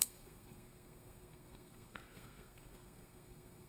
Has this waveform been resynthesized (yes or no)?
yes